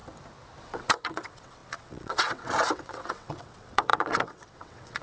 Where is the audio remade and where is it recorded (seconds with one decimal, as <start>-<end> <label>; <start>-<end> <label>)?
0.0-0.6 recorded; 0.6-5.0 remade